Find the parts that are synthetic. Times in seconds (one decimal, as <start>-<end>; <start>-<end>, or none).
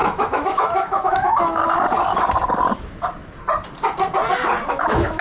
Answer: 0.0-1.6; 4.7-5.2